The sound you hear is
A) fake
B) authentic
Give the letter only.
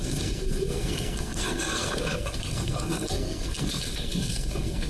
A